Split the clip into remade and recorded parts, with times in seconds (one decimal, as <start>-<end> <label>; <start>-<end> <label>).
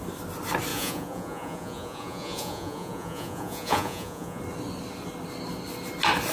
0.0-0.7 recorded; 0.7-4.4 remade; 4.4-6.3 recorded